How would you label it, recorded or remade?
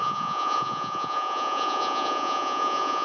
remade